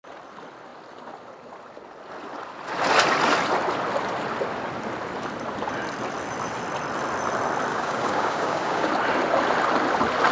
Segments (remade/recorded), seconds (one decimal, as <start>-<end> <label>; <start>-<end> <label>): 0.0-7.7 recorded; 7.7-8.9 remade; 8.9-10.3 recorded